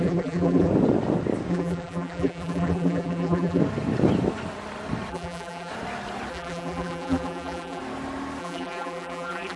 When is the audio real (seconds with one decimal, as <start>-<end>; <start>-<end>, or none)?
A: 0.7-1.5; 3.6-5.1; 5.7-6.3; 7.8-8.4